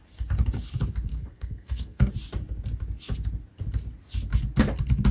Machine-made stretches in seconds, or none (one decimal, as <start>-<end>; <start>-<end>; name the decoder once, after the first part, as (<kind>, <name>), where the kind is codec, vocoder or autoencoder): 1.1-2.1 (codec, SNAC)